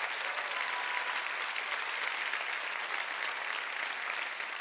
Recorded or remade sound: recorded